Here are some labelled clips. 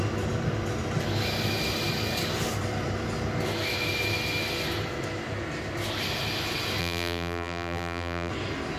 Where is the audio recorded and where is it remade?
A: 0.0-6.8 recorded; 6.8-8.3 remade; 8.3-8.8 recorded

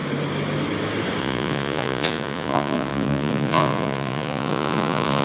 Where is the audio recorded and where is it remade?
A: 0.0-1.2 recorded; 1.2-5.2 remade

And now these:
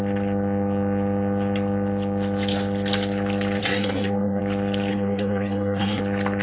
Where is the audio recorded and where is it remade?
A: 0.0-3.6 recorded; 3.6-4.4 remade; 4.4-4.9 recorded; 4.9-6.0 remade; 6.0-6.4 recorded

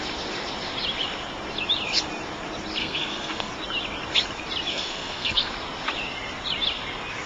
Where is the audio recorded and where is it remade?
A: 0.0-2.8 recorded; 2.8-3.5 remade; 3.5-4.7 recorded; 4.7-5.5 remade; 5.5-7.3 recorded

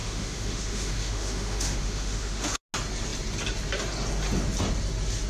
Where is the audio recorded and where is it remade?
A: 0.0-2.6 remade; 2.6-5.3 recorded